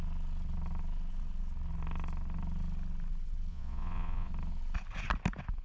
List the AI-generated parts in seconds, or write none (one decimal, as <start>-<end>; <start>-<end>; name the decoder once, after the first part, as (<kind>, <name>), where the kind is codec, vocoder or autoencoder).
3.5-4.3 (vocoder, Vocos)